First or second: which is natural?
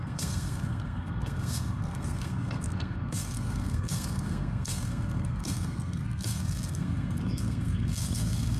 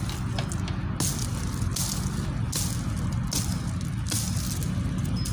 second